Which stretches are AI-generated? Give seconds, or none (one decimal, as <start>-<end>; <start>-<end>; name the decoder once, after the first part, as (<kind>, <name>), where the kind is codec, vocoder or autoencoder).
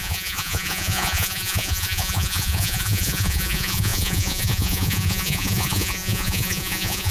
0.0-7.1 (vocoder, Vocos)